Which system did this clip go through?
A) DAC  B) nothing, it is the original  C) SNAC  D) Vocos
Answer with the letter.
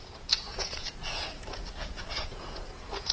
D